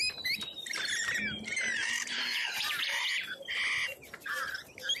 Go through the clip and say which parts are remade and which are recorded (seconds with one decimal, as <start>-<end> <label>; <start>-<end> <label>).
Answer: 0.0-1.8 recorded; 1.8-3.0 remade; 3.0-5.0 recorded